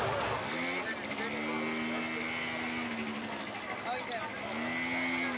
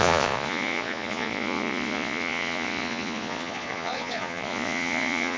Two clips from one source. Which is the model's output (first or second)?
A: second